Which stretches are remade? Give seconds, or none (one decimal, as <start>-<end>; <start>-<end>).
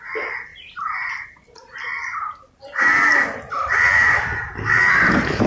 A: 0.5-1.1